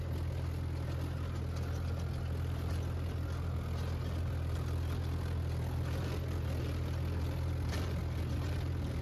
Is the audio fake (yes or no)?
no